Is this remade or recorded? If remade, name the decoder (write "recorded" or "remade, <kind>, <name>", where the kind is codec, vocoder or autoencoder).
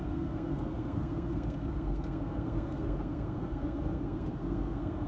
remade, codec, SNAC